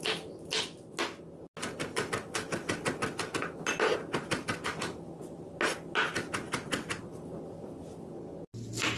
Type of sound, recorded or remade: recorded